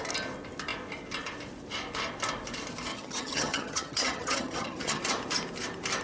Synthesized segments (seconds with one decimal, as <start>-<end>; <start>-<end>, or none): 2.9-5.0